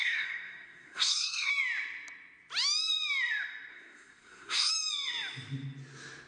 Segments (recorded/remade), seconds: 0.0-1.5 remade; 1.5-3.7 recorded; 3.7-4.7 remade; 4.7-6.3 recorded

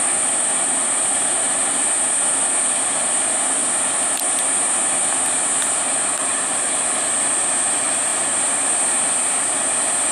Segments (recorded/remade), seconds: 0.0-10.1 recorded

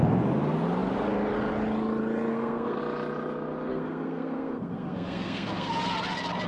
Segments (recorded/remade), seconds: 0.0-2.3 recorded; 2.3-2.8 remade; 2.8-3.7 recorded; 3.7-5.7 remade; 5.7-6.5 recorded

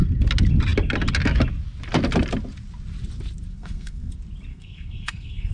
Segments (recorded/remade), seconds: 0.0-3.5 recorded; 3.5-4.1 remade; 4.1-4.5 recorded; 4.5-5.5 remade

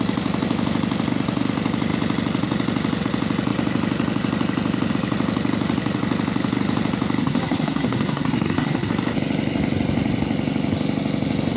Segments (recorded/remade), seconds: 0.0-7.2 recorded; 7.2-8.9 remade; 8.9-11.6 recorded